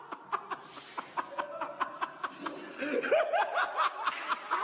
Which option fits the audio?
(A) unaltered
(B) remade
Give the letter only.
A